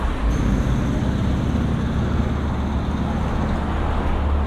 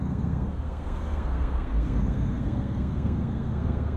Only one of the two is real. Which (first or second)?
first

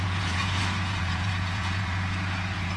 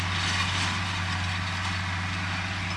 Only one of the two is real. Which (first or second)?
second